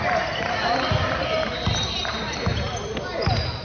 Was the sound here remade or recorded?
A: recorded